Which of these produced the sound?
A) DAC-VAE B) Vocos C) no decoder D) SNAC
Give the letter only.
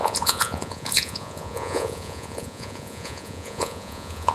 B